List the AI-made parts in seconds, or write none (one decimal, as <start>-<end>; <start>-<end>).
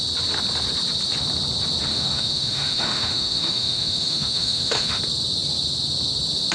1.9-5.0